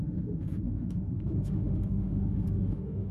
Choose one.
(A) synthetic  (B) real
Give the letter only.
A